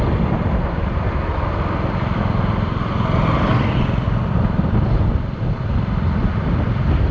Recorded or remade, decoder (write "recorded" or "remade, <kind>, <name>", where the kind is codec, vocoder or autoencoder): remade, vocoder, BigVGAN v2